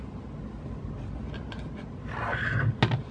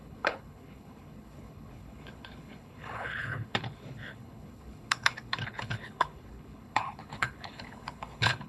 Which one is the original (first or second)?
first